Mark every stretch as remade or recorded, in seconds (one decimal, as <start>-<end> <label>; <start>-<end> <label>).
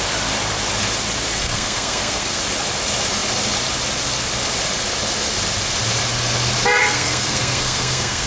0.0-1.4 recorded; 1.4-2.4 remade; 2.4-6.8 recorded; 6.8-8.3 remade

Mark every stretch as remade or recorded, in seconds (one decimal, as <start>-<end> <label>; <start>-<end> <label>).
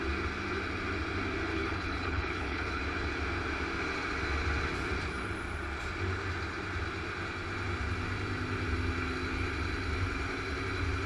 0.0-1.5 recorded; 1.5-2.8 remade; 2.8-11.1 recorded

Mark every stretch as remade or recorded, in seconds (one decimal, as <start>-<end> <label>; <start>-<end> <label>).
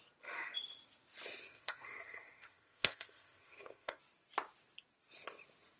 0.0-1.4 recorded; 1.4-4.0 remade; 4.0-5.8 recorded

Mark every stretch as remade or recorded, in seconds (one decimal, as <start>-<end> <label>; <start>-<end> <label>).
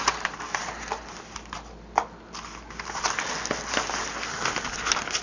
0.0-5.2 recorded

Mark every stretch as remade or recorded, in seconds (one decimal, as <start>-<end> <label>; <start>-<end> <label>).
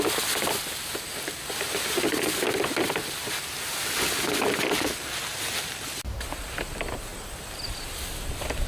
0.0-7.1 recorded; 7.1-8.1 remade; 8.1-8.7 recorded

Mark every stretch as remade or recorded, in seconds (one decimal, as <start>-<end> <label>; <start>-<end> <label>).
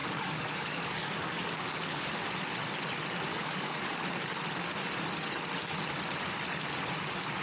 0.0-2.2 remade; 2.2-3.3 recorded; 3.3-4.0 remade; 4.0-7.4 recorded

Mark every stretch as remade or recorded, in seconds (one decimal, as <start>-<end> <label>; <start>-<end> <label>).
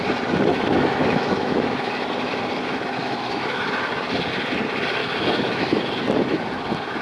0.0-0.5 recorded; 0.5-1.9 remade; 1.9-3.0 recorded; 3.0-3.7 remade; 3.7-5.0 recorded; 5.0-5.8 remade; 5.8-7.0 recorded